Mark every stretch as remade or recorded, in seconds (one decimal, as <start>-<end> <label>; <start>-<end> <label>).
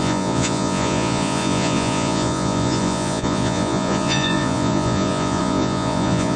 0.0-6.4 remade